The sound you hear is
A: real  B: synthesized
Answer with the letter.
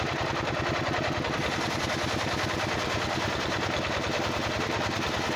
A